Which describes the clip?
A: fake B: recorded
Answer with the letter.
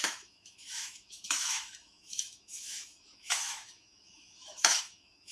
A